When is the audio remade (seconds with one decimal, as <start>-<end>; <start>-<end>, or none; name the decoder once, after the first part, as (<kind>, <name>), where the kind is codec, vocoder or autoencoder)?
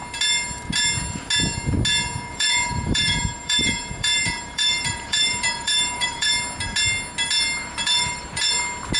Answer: 2.3-6.3 (vocoder, BigVGAN v2); 7.6-8.6